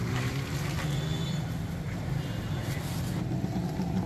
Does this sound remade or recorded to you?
remade